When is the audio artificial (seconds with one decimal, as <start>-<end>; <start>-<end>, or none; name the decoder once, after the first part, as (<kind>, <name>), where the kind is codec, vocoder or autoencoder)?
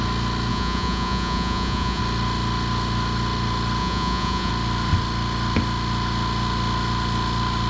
0.5-2.0 (vocoder, Vocos); 3.8-4.5